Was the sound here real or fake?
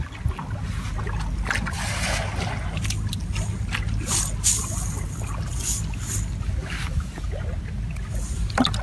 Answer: real